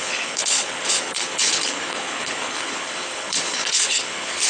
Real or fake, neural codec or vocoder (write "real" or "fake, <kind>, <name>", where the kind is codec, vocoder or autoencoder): fake, codec, HILCodec